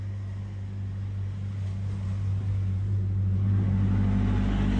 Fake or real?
real